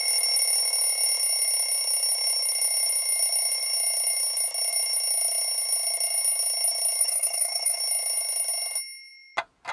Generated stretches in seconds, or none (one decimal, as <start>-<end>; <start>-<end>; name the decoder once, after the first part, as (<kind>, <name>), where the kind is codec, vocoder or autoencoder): 7.0-7.8 (autoencoder, DAC-VAE)

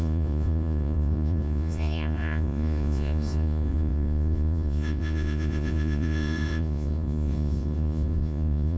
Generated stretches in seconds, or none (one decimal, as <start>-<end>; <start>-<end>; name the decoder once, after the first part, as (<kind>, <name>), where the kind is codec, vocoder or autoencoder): 0.0-8.8 (vocoder, Vocos)

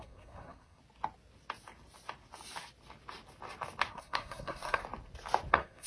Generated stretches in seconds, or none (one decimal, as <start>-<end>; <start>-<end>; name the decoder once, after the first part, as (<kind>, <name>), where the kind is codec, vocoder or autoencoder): 0.0-0.8 (codec, SNAC); 3.9-4.8; 5.5-5.9

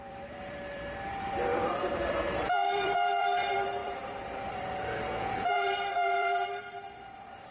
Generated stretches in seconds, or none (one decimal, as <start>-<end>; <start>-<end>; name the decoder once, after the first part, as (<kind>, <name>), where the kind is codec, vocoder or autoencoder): 0.0-7.5 (vocoder, BigVGAN v2)

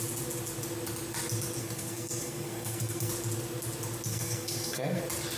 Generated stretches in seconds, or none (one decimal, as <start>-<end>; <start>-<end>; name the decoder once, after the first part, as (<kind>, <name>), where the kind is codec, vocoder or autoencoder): 1.6-3.1 (codec, SNAC); 4.1-5.0

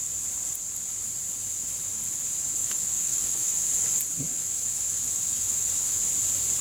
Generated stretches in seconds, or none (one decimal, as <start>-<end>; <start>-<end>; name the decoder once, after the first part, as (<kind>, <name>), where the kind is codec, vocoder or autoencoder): 2.6-3.7 (autoencoder, DAC-VAE); 4.4-6.0

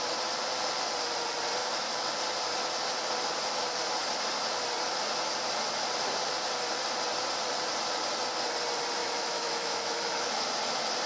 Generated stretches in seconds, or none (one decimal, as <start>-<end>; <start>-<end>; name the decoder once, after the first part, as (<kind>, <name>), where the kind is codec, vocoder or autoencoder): 1.6-2.1 (autoencoder, DAC-VAE); 9.0-10.3